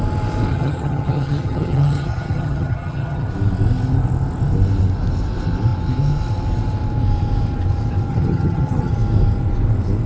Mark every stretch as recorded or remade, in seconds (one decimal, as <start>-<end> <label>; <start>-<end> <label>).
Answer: 0.0-0.5 recorded; 0.5-3.3 remade; 3.3-8.1 recorded; 8.1-8.9 remade; 8.9-10.1 recorded